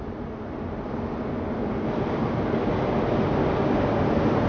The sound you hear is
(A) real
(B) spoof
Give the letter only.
A